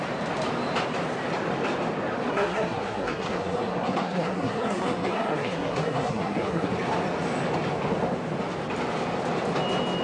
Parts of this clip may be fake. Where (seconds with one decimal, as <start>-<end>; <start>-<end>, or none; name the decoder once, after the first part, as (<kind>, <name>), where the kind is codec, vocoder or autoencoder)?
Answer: 2.3-6.7 (codec, SNAC)